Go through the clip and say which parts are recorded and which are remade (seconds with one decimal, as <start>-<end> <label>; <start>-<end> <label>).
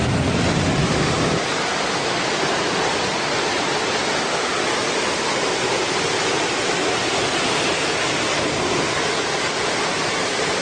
0.0-7.0 recorded; 7.0-8.0 remade; 8.0-10.6 recorded